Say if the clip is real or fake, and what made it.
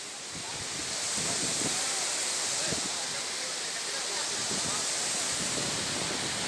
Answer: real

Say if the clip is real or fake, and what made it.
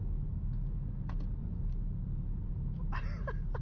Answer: real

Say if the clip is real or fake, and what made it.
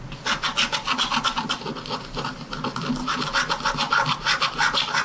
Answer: real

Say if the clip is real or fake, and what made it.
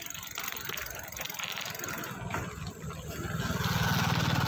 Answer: real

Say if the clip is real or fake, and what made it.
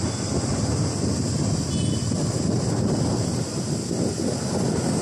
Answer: real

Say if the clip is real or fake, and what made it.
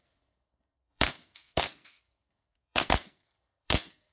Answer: fake, codec, SNAC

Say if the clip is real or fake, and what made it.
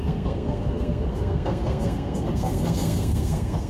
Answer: fake, codec, SNAC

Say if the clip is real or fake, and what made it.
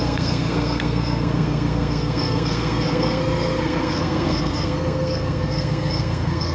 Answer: fake, codec, SNAC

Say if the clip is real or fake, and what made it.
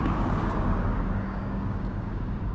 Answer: fake, codec, DAC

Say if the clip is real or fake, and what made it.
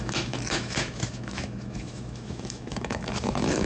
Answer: fake, autoencoder, DAC-VAE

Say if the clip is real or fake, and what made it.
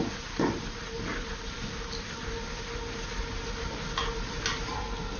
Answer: real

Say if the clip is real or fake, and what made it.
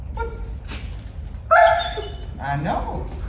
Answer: real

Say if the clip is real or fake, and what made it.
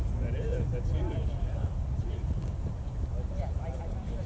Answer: real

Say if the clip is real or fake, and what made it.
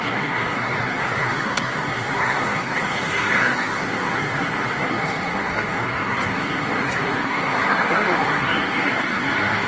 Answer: fake, codec, SNAC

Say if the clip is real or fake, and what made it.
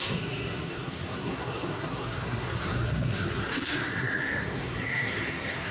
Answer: fake, codec, SNAC